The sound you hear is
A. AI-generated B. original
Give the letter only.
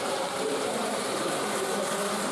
A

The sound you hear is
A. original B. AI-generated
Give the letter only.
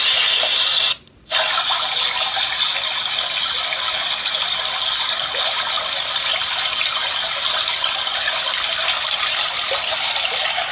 B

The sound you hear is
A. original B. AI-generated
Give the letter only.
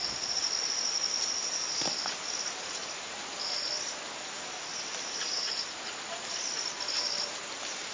A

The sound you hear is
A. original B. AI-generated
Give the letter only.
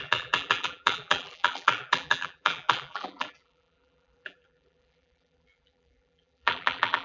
B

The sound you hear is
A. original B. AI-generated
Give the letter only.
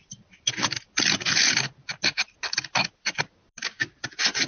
A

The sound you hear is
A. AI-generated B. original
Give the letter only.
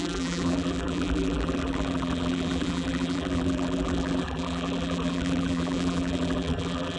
A